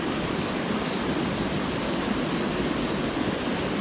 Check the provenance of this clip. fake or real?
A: real